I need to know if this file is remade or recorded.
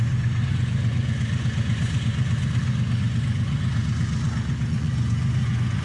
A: remade